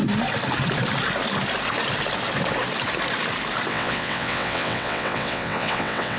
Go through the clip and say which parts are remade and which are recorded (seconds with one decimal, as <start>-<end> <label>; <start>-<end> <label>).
0.0-3.7 recorded; 3.7-6.2 remade

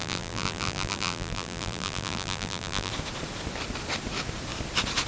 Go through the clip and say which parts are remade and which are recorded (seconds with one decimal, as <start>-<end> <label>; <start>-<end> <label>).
0.0-2.9 remade; 2.9-5.1 recorded

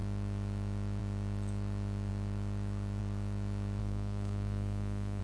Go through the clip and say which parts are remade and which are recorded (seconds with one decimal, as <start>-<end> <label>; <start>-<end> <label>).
0.0-3.8 recorded; 3.8-5.2 remade

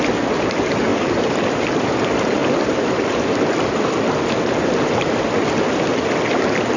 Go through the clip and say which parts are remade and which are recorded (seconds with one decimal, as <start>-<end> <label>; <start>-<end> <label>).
0.0-0.9 recorded; 0.9-1.8 remade; 1.8-2.4 recorded; 2.4-5.1 remade; 5.1-6.8 recorded

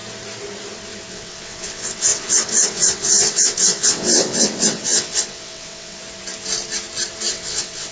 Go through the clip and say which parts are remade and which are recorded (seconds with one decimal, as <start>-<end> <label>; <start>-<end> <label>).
0.0-1.1 recorded; 1.1-6.0 remade; 6.0-7.3 recorded; 7.3-7.9 remade